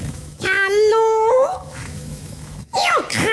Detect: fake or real fake